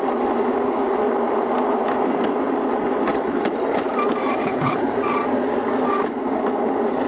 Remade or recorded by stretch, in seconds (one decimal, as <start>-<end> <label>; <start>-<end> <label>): 0.0-4.4 recorded; 4.4-4.9 remade; 4.9-7.1 recorded